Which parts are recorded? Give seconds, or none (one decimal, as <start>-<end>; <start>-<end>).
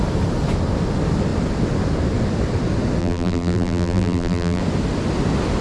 0.0-3.0; 4.6-5.6